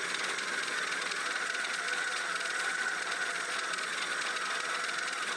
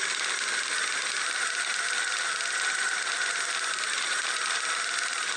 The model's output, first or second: first